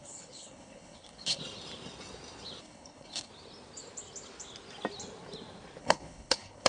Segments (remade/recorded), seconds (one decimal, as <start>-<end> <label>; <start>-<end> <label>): 0.0-1.4 remade; 1.4-2.6 recorded; 2.6-3.3 remade; 3.3-5.8 recorded; 5.8-6.7 remade